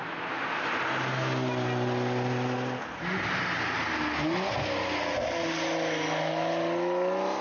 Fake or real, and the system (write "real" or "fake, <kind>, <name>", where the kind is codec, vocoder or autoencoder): real